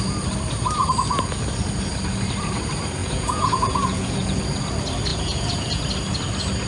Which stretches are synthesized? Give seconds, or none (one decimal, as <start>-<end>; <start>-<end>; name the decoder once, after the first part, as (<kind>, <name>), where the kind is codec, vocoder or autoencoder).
3.0-4.4 (vocoder, Vocos); 5.1-5.8